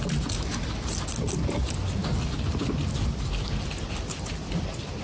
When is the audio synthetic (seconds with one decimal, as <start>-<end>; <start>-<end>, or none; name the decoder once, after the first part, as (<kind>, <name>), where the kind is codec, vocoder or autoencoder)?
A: none